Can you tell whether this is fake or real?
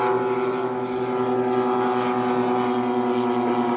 real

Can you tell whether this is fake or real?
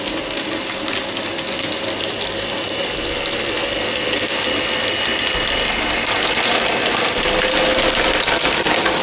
real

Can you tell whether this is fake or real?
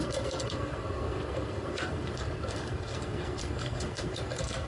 fake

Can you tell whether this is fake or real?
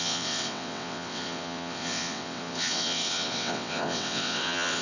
fake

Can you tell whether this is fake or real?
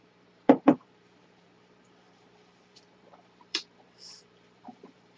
fake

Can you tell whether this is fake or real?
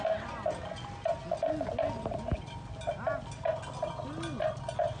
real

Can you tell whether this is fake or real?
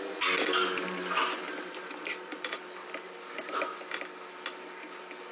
real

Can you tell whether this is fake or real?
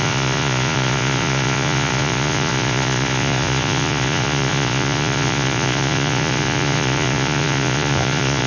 fake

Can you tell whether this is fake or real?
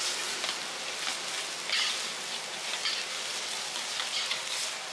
real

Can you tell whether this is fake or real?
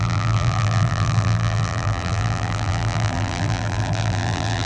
fake